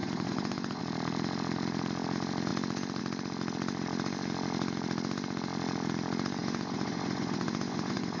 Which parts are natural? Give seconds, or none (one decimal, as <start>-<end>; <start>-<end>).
0.8-6.4